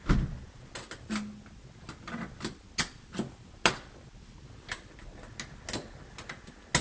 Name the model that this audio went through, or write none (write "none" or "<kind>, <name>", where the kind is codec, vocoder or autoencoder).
none